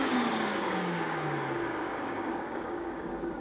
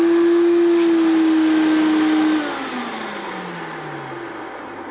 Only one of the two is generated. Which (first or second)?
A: first